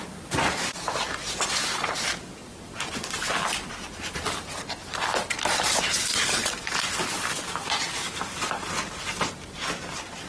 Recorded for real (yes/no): yes